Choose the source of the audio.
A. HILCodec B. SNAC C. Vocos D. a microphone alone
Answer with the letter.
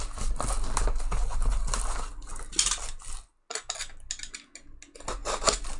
D